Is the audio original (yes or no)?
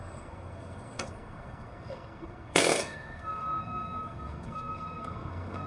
no